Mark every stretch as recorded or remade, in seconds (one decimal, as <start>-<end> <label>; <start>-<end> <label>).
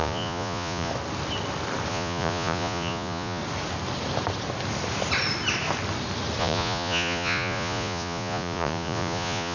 0.0-0.9 remade; 0.9-1.9 recorded; 1.9-3.4 remade; 3.4-6.4 recorded; 6.4-9.5 remade